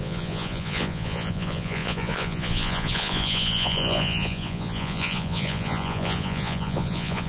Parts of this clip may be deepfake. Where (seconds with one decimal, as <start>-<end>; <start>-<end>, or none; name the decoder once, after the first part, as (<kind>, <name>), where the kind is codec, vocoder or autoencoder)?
0.0-7.3 (vocoder, Vocos)